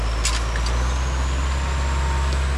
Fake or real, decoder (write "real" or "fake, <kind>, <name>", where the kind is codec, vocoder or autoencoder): real